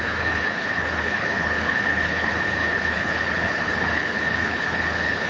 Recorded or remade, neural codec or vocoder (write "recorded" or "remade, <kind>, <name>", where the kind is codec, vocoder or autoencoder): remade, codec, HILCodec